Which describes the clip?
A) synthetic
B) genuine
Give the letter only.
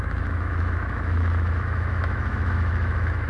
A